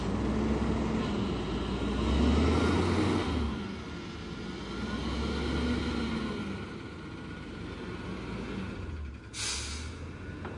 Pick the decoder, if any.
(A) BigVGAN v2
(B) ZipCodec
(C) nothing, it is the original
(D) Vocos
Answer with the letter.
C